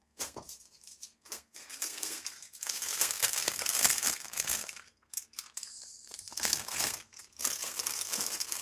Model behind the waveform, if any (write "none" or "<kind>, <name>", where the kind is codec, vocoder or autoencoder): codec, SNAC